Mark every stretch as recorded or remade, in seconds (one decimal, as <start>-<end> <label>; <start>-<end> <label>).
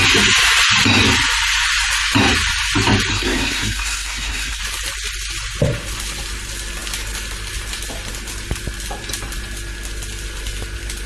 0.0-3.1 recorded; 3.1-4.6 remade; 4.6-11.1 recorded